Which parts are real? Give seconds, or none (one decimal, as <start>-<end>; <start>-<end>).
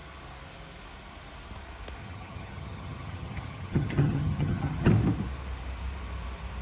0.0-2.0; 4.9-6.6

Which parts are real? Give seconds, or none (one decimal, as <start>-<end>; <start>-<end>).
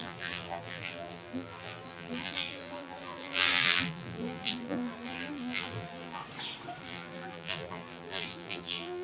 6.2-6.8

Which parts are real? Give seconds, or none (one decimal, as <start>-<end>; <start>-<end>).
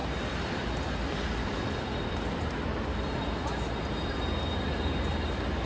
0.0-5.7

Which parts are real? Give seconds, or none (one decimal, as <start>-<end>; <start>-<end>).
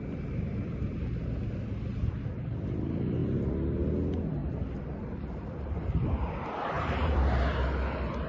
0.0-8.3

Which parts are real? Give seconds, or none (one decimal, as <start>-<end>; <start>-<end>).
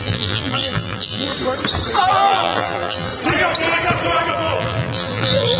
1.3-2.1; 3.1-4.3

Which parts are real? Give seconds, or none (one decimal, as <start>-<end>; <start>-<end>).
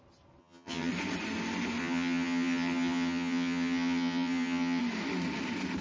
0.0-0.4; 0.9-1.8; 4.8-5.8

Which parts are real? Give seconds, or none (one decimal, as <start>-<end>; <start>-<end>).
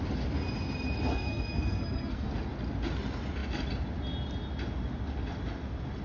0.0-1.1; 2.3-6.0